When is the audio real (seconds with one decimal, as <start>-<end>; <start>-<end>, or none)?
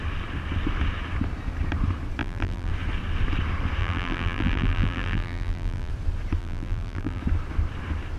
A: 0.0-2.2; 2.7-3.8; 5.9-6.4; 7.2-8.2